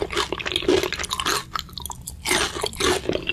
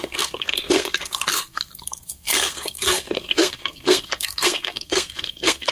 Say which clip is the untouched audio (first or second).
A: first